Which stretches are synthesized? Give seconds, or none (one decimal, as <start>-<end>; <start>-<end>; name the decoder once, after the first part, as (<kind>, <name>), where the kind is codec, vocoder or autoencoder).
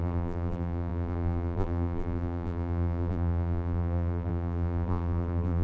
0.0-5.6 (vocoder, BigVGAN v2)